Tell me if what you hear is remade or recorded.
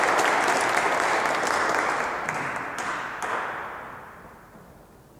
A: recorded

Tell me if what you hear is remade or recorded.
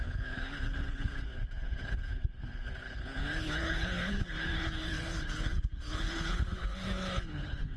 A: remade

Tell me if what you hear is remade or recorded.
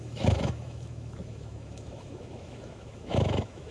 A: remade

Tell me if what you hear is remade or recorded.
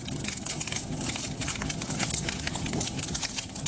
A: remade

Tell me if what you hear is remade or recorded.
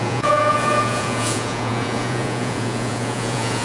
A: remade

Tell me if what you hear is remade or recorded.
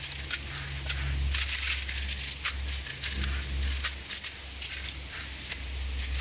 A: recorded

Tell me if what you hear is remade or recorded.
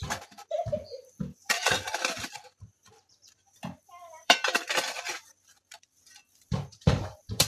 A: remade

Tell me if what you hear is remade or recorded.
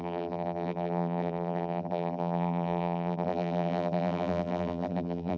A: remade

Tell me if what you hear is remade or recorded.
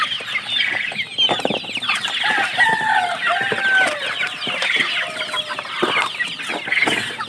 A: recorded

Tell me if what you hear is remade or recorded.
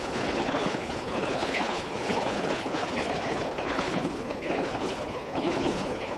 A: remade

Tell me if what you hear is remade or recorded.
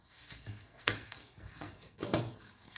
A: remade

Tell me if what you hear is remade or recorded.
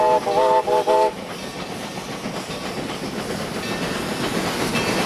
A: recorded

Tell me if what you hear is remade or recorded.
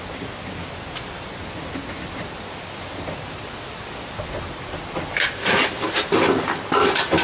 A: recorded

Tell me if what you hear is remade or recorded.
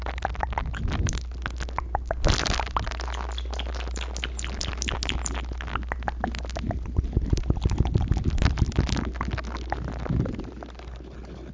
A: recorded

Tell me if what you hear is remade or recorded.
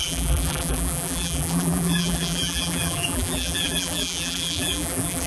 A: remade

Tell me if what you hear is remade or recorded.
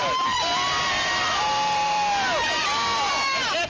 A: remade